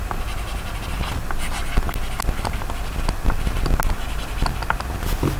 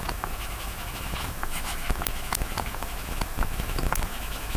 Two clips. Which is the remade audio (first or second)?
second